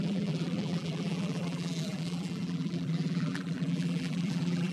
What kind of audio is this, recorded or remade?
remade